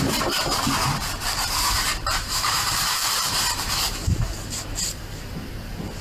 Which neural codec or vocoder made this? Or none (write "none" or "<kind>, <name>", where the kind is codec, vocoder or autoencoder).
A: vocoder, BigVGAN v2